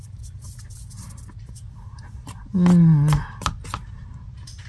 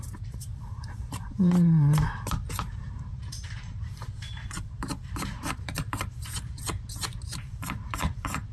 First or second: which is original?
first